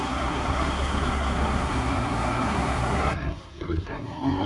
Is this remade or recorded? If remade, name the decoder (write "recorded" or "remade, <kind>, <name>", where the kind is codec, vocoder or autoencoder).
remade, codec, SNAC